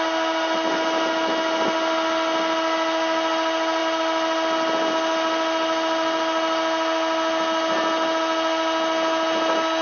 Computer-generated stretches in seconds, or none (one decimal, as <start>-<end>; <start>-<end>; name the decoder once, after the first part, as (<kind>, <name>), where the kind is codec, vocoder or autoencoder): none